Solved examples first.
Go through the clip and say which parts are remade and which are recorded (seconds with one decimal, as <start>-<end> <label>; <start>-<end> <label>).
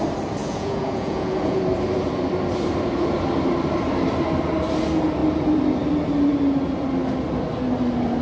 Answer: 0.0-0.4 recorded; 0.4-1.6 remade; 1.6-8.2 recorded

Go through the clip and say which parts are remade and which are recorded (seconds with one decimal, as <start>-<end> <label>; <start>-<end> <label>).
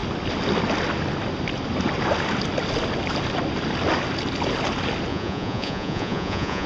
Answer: 0.0-5.1 recorded; 5.1-6.7 remade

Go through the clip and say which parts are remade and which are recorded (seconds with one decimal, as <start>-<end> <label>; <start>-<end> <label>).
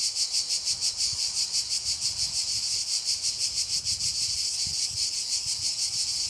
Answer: 0.0-6.3 recorded